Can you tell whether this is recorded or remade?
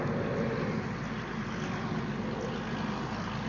recorded